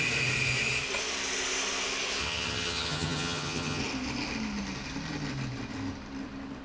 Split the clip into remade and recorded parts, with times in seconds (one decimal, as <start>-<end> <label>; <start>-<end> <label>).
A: 0.0-2.2 recorded; 2.2-3.8 remade; 3.8-6.6 recorded